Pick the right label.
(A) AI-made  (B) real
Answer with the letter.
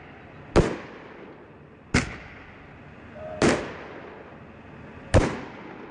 B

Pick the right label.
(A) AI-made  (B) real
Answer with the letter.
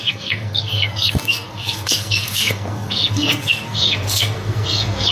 A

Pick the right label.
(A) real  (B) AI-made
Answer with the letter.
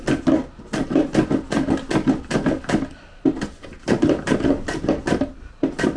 A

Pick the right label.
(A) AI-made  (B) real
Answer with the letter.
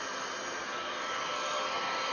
B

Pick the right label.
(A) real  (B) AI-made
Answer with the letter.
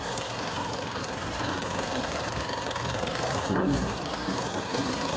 B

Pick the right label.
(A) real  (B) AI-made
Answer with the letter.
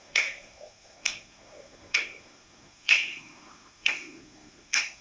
B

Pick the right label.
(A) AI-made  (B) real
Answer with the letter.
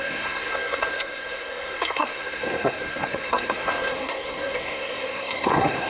A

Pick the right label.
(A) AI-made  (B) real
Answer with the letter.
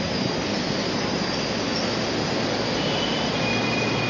B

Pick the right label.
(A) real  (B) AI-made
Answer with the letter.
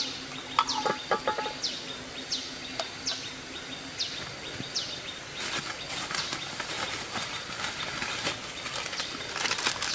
A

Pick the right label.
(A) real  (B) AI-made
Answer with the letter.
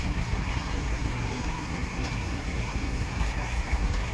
B